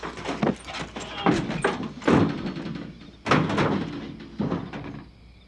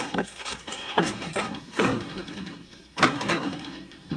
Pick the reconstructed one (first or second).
second